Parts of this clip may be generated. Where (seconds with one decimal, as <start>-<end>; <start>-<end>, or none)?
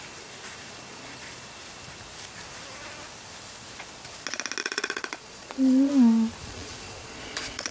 4.6-5.9; 6.4-7.7